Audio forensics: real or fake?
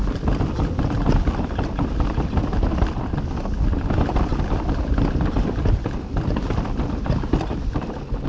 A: real